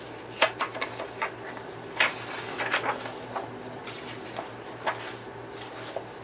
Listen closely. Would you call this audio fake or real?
real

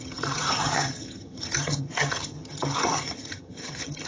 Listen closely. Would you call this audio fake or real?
fake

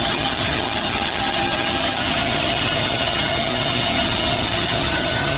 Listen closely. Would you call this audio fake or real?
fake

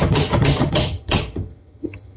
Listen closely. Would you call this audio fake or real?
fake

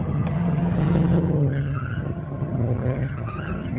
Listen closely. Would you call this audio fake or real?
fake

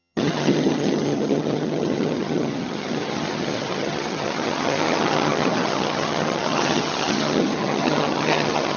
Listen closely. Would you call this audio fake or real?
fake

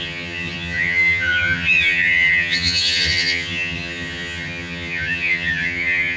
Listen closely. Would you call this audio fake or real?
fake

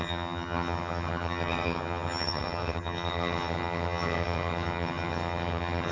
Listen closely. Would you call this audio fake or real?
fake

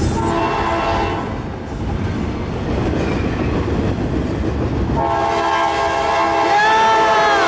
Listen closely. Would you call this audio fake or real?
real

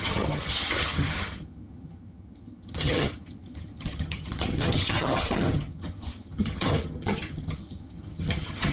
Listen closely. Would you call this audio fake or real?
fake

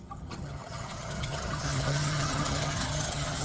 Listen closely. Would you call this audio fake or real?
fake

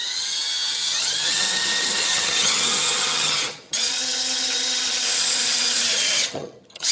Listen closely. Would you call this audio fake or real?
fake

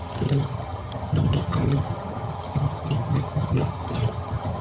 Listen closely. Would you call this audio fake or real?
fake